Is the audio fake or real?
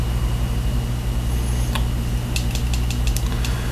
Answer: real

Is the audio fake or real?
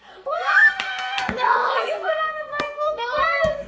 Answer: fake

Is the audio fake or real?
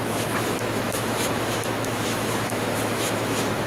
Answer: fake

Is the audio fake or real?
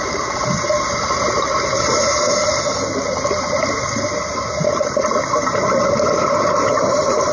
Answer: real